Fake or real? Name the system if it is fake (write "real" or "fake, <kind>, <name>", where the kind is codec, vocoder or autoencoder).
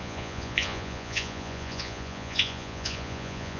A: fake, vocoder, Vocos